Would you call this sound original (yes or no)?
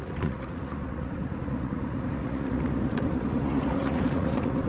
no